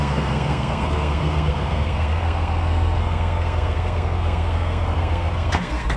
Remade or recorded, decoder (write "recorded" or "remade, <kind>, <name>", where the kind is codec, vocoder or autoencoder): remade, codec, SNAC